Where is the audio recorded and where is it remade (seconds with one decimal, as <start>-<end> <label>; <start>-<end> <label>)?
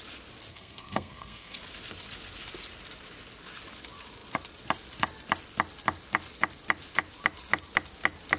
0.0-0.5 recorded; 0.5-1.6 remade; 1.6-8.4 recorded